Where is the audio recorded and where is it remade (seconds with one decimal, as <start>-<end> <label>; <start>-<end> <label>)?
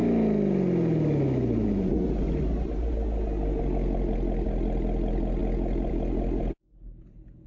0.0-7.5 recorded